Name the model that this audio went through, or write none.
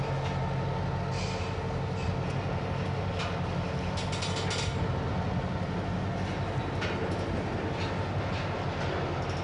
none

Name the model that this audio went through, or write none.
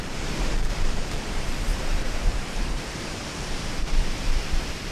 vocoder, BigVGAN v2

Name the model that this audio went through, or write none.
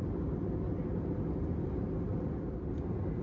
none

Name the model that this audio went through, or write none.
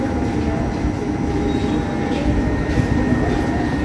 none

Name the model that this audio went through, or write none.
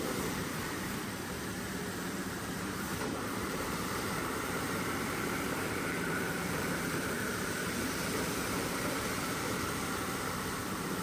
vocoder, BigVGAN v2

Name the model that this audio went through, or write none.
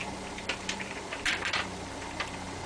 vocoder, BigVGAN v2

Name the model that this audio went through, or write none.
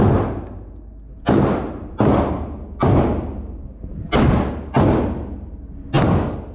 none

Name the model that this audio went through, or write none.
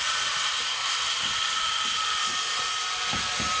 vocoder, BigVGAN v2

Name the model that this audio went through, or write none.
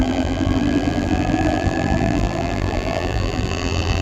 vocoder, BigVGAN v2